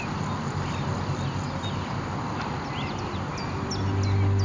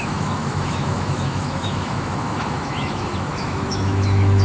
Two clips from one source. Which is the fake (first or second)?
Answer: second